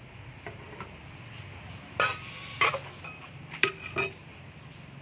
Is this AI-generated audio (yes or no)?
no